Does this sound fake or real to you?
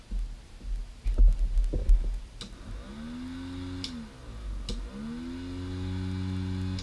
real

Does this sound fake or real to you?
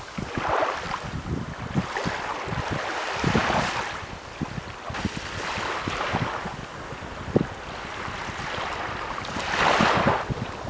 real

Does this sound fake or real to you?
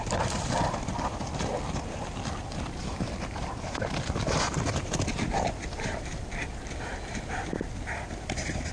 fake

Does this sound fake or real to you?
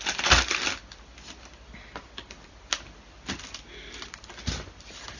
real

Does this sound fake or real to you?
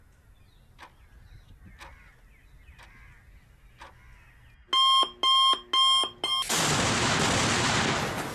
real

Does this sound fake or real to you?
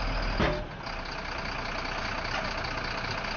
real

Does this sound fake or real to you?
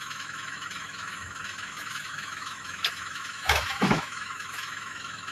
fake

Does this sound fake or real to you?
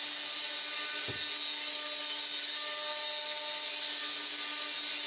real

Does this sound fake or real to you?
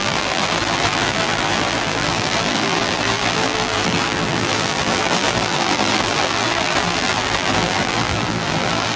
fake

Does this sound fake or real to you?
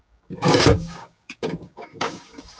fake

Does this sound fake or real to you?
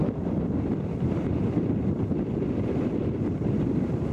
fake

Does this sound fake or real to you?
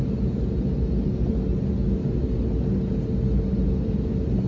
real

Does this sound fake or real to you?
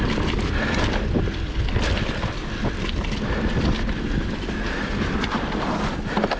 real